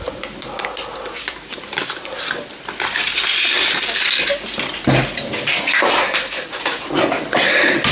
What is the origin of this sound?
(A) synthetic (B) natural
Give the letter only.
A